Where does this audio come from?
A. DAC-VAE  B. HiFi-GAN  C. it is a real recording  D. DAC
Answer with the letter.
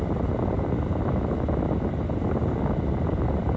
C